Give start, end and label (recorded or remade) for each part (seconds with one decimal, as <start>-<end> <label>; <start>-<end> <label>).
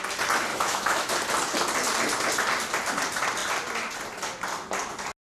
0.0-0.5 recorded; 0.5-1.1 remade; 1.1-5.3 recorded